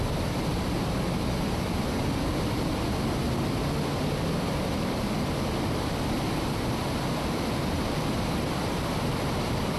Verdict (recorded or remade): recorded